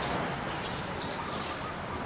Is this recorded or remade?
recorded